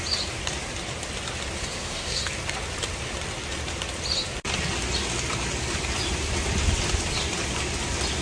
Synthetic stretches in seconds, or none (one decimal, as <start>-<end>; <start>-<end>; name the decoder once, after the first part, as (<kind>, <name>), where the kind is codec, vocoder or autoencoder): 1.6-2.2 (codec, SNAC)